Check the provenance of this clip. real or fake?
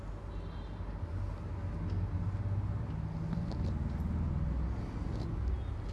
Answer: real